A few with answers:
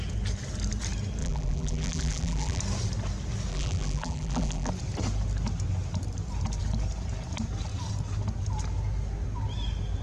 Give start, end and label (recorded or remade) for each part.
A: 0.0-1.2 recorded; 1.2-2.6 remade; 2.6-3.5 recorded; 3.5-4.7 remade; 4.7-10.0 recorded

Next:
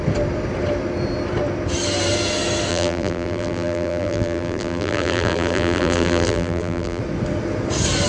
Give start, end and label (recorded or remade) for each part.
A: 0.0-2.7 recorded; 2.7-7.0 remade; 7.0-8.1 recorded

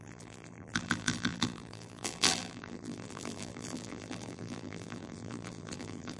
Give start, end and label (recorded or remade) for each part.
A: 0.0-6.2 remade